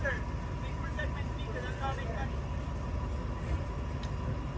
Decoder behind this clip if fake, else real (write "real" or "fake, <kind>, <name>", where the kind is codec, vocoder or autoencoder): real